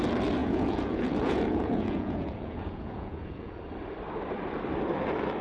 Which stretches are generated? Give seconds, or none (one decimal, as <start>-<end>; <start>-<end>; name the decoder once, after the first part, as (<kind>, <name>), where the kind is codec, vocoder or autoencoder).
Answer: 0.4-3.6 (vocoder, Vocos)